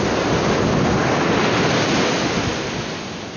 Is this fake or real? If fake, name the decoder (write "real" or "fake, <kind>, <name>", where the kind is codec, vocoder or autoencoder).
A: real